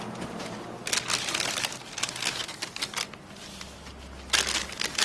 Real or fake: real